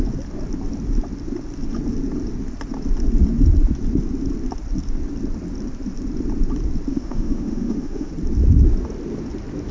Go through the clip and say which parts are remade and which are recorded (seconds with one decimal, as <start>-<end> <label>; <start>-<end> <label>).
0.0-6.9 recorded; 6.9-8.1 remade; 8.1-9.7 recorded